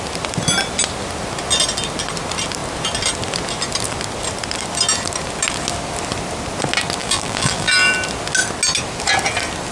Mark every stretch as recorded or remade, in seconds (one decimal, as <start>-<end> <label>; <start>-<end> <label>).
0.0-7.0 recorded; 7.0-7.9 remade; 7.9-9.7 recorded